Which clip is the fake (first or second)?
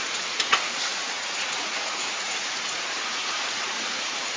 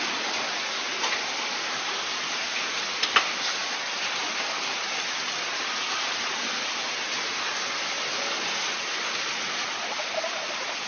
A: first